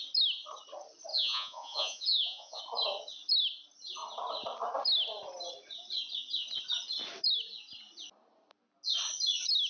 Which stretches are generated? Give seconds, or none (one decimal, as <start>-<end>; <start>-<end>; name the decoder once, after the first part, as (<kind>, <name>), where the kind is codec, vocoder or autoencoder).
1.1-2.6 (vocoder, Vocos)